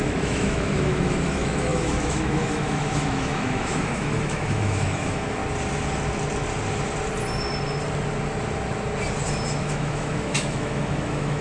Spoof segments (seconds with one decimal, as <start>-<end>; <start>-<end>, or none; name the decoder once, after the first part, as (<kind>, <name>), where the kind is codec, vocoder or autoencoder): 0.0-5.4 (autoencoder, DAC-VAE); 9.6-11.4